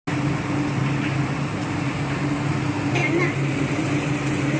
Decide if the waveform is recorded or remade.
recorded